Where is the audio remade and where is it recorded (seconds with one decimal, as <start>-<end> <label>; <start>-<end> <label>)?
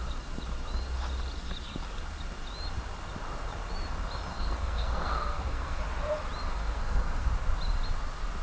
0.0-4.3 recorded; 4.3-5.8 remade; 5.8-6.5 recorded; 6.5-7.3 remade; 7.3-8.4 recorded